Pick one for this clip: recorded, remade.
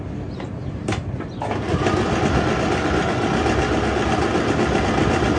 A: recorded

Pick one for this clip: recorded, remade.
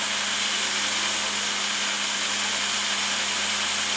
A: recorded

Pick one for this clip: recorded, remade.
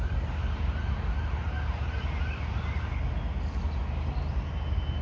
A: recorded